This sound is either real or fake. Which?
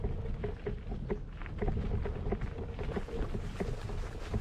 real